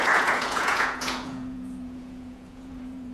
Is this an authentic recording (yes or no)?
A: no